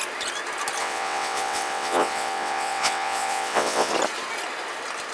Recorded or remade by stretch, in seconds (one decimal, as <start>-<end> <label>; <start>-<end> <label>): 0.0-0.8 recorded; 0.8-3.9 remade; 3.9-5.1 recorded